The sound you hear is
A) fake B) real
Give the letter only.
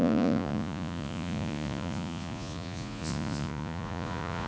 A